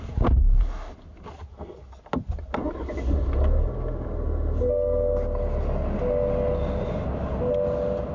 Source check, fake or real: real